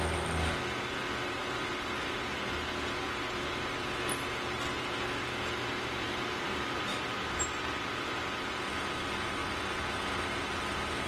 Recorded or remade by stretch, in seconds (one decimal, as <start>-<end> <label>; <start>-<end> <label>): 0.0-5.7 recorded; 5.7-8.1 remade; 8.1-9.4 recorded; 9.4-10.0 remade; 10.0-11.1 recorded